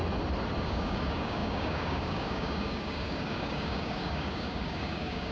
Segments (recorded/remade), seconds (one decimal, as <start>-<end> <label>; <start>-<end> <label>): 0.0-0.6 recorded; 0.6-5.3 remade